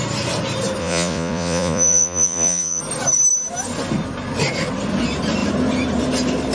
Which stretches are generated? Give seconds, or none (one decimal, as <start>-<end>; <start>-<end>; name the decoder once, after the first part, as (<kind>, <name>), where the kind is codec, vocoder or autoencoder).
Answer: 0.8-2.8 (vocoder, Vocos)